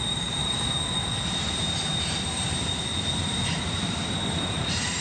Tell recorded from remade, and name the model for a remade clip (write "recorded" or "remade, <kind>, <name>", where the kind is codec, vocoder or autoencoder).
remade, vocoder, BigVGAN v2